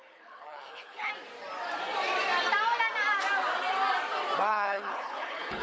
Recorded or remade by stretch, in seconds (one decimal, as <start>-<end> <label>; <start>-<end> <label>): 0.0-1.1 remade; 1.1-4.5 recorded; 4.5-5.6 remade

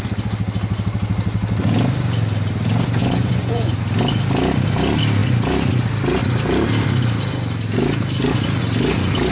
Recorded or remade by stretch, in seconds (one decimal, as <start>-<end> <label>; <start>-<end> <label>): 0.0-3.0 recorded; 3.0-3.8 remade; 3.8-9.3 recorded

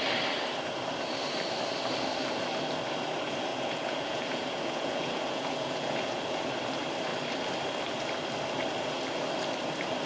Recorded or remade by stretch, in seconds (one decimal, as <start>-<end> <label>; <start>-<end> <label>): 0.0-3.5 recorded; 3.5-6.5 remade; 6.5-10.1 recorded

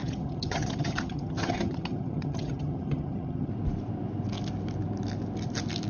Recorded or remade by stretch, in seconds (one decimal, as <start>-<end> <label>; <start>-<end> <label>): 0.0-3.5 remade; 3.5-5.9 recorded

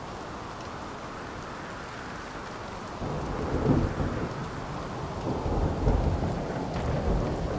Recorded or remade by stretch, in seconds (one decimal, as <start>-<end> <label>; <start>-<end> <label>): 0.0-7.6 recorded

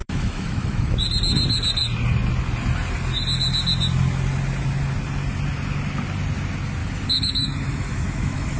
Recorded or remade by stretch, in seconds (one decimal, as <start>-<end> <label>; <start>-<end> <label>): 0.0-1.0 remade; 1.0-6.8 recorded; 6.8-8.6 remade